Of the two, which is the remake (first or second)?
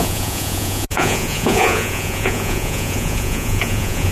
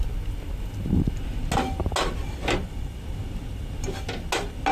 first